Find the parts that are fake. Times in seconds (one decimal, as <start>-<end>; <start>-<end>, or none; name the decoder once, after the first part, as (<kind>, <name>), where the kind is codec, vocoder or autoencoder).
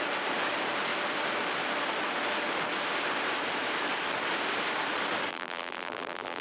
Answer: 5.3-6.4 (vocoder, BigVGAN v2)